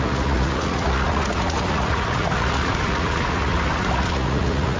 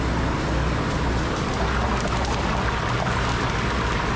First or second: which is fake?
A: first